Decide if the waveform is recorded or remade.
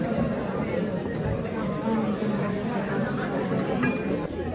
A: recorded